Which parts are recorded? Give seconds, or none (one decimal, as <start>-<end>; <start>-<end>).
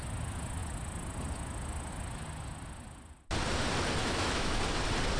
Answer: 0.0-4.0; 4.6-5.2